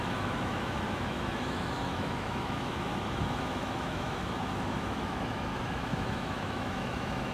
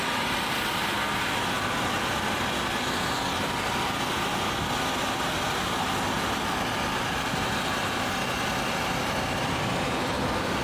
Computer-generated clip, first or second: first